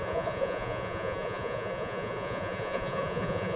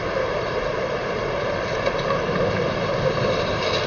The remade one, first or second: first